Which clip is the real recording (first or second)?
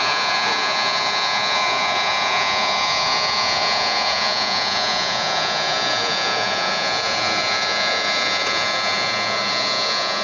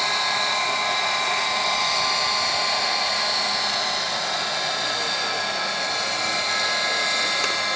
second